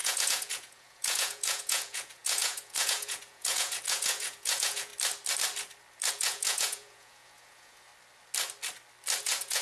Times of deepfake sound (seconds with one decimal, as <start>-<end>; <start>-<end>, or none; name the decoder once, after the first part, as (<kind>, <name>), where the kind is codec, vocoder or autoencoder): 0.0-4.9 (vocoder, Vocos); 6.1-7.9; 9.2-9.6